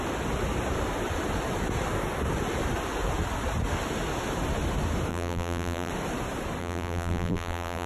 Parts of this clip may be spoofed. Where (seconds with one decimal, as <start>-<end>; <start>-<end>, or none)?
5.1-5.9; 6.6-7.9